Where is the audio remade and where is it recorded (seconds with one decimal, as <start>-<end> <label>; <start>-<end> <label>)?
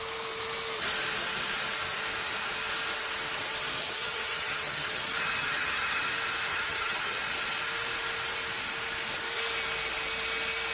0.0-3.8 recorded; 3.8-5.0 remade; 5.0-5.4 recorded; 5.4-6.0 remade; 6.0-6.5 recorded; 6.5-7.2 remade; 7.2-10.7 recorded